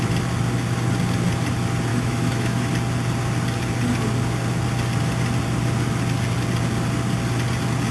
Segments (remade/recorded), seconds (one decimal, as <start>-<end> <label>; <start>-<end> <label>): 0.0-1.9 recorded; 1.9-2.7 remade; 2.7-7.9 recorded